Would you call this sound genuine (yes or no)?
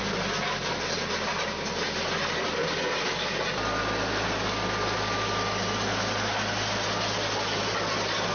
yes